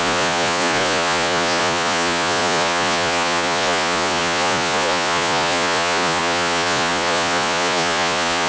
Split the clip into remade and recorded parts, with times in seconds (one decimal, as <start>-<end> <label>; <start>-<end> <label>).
0.0-8.5 remade